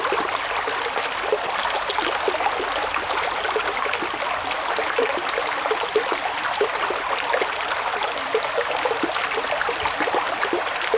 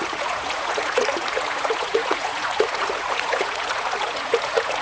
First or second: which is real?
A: first